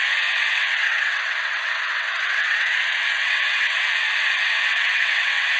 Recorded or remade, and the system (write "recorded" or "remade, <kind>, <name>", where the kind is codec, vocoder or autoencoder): remade, vocoder, WaveNeXt